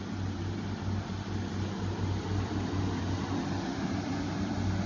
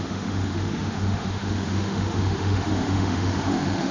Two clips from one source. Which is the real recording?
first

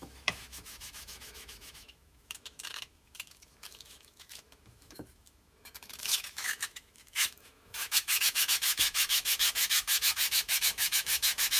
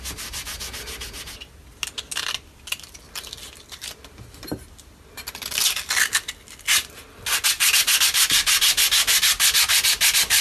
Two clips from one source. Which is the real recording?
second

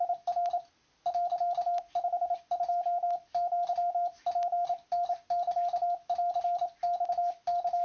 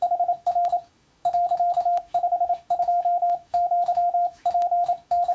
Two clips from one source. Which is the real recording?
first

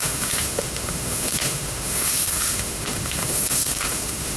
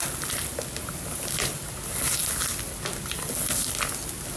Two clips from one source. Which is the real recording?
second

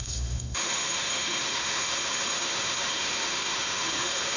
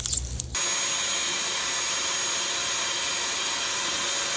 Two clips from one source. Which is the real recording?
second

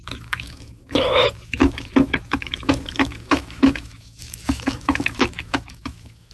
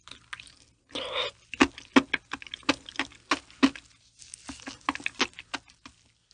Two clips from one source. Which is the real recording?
second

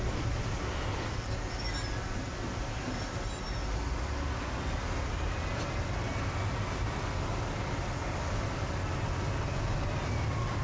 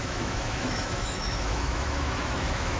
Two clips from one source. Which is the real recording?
first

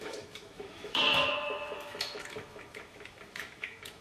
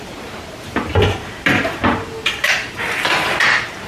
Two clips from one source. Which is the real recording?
second